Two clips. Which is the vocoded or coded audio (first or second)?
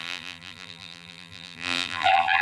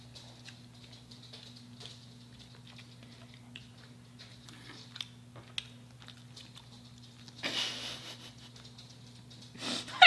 first